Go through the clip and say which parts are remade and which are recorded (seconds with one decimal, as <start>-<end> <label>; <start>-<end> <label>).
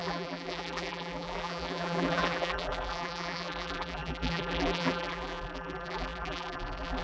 0.0-7.0 remade